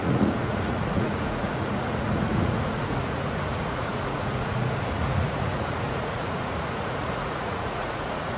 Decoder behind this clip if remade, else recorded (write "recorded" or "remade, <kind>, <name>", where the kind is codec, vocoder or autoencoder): remade, vocoder, Vocos